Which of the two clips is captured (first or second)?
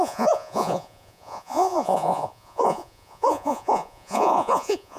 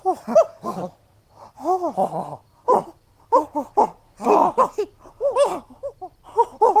second